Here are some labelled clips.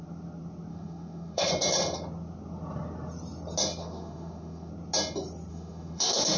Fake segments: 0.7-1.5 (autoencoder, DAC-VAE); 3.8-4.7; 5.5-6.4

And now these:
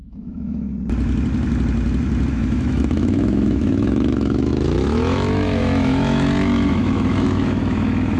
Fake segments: 0.0-0.7 (autoencoder, DAC-VAE); 2.3-8.2

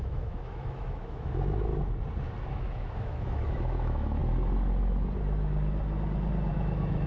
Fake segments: 0.0-1.7 (autoencoder, DAC-VAE); 2.5-4.2; 6.5-7.1

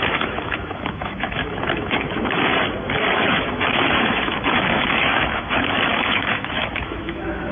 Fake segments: 0.0-2.5 (autoencoder, DAC-VAE); 3.1-7.5